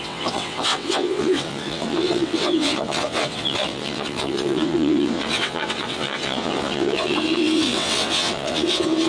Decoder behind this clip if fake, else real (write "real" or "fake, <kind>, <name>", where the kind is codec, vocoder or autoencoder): fake, vocoder, WaveNeXt